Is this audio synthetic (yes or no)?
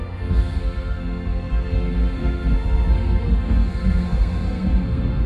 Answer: yes